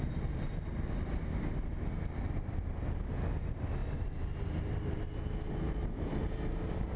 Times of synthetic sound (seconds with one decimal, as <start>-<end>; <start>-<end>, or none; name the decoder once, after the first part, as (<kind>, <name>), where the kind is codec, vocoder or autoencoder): none